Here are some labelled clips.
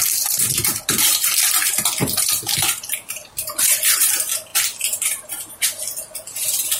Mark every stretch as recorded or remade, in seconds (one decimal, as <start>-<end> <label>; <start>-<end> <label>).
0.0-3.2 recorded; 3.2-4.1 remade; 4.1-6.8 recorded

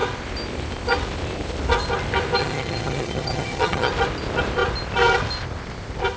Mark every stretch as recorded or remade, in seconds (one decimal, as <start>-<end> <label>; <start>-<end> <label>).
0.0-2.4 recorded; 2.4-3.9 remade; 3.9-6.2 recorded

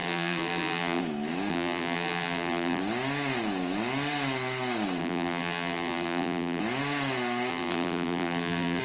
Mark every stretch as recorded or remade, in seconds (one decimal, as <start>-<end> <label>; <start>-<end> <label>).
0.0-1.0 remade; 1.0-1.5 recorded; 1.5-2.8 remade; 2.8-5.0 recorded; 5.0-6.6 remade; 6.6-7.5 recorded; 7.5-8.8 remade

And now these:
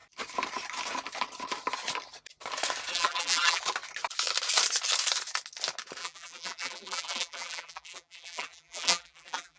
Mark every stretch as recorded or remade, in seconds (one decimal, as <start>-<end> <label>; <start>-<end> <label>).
0.0-2.9 recorded; 2.9-3.6 remade; 3.6-6.0 recorded; 6.0-9.6 remade

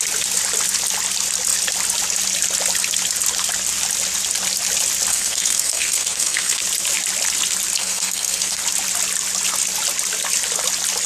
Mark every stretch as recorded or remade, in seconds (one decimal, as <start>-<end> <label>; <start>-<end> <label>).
0.0-5.1 recorded; 5.1-6.6 remade; 6.6-7.8 recorded; 7.8-8.6 remade; 8.6-11.1 recorded